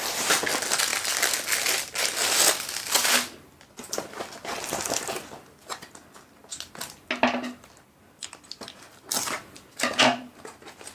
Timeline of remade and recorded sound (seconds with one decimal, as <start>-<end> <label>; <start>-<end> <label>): 0.0-8.0 recorded; 8.0-8.6 remade; 8.6-10.9 recorded